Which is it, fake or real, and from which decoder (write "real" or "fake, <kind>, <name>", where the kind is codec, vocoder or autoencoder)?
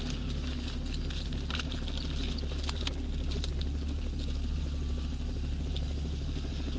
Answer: real